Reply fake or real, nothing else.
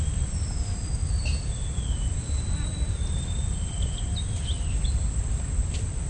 real